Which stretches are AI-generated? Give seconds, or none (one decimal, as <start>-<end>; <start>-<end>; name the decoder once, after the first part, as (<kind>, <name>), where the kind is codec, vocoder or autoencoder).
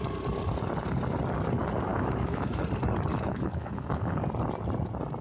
1.9-2.6 (autoencoder, DAC-VAE); 3.1-4.1